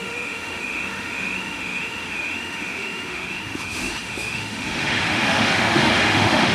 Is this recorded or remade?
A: remade